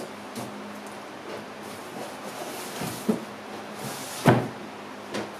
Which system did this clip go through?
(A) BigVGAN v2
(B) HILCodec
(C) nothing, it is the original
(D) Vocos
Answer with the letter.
C